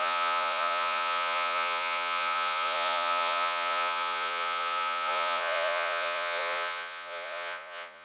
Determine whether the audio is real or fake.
fake